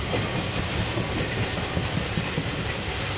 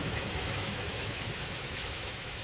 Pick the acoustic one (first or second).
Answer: first